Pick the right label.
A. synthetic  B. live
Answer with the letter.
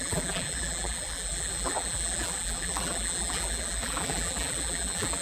A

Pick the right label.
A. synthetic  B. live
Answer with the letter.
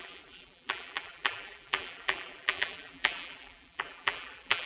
A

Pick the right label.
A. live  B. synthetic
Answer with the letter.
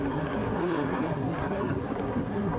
B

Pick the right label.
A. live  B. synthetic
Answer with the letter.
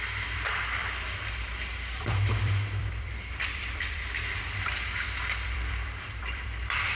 B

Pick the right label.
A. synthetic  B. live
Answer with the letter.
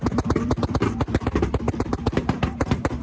A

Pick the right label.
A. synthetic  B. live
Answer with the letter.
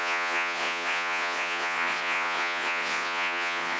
A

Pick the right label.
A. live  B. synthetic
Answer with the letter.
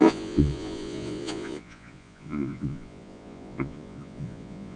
B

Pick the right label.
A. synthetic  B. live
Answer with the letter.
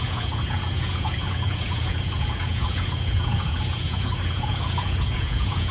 A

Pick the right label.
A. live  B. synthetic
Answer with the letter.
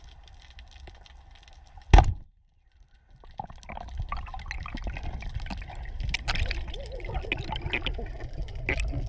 A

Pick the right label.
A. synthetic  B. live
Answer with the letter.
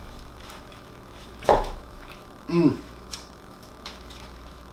A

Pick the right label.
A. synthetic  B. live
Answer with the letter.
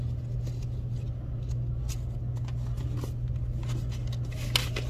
B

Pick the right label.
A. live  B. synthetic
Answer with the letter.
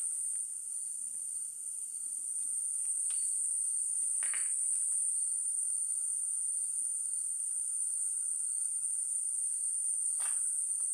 A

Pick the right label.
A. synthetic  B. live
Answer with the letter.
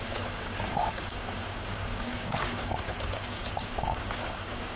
A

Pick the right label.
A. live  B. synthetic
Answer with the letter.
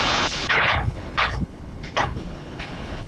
B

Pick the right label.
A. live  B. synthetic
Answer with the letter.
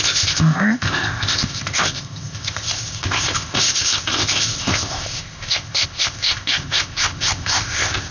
B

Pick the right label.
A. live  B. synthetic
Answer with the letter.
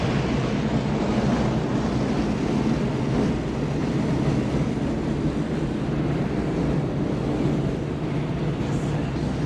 A